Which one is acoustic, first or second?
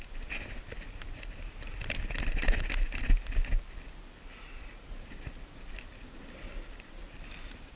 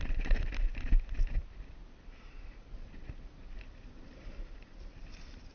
first